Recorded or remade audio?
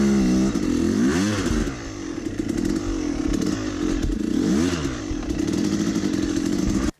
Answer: recorded